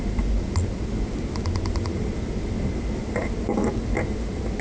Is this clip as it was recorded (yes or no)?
yes